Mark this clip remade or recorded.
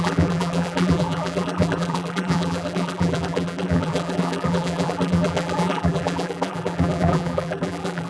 remade